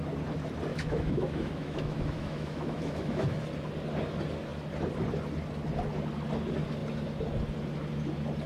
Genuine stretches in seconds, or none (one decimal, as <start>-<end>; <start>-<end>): 0.0-0.7; 3.4-8.5